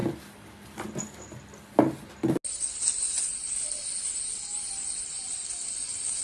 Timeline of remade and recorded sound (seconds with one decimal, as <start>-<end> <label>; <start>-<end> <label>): 0.0-6.2 recorded